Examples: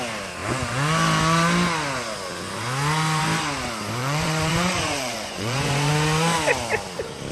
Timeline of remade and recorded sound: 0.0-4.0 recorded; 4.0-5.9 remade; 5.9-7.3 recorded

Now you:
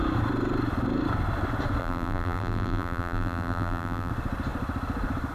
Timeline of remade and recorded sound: 0.0-1.8 recorded; 1.8-4.1 remade; 4.1-5.3 recorded

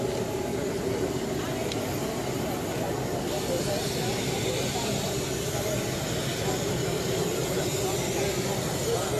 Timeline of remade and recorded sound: 0.0-9.2 recorded

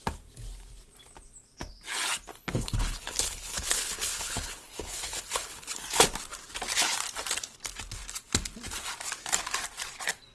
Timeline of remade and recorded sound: 0.0-2.3 recorded; 2.3-5.8 remade; 5.8-10.3 recorded

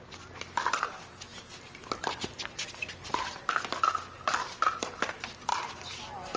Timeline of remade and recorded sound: 0.0-3.1 remade; 3.1-4.7 recorded; 4.7-5.5 remade; 5.5-6.4 recorded

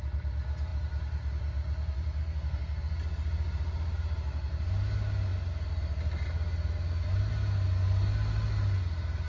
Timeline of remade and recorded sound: 0.0-2.2 recorded; 2.2-2.8 remade; 2.8-9.3 recorded